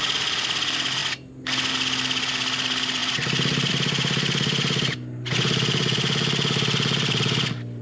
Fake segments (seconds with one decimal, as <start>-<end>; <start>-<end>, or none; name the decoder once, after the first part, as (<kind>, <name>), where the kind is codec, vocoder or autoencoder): none